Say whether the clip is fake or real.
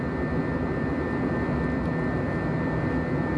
real